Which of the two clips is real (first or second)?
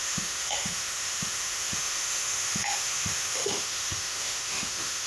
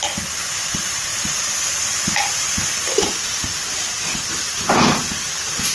second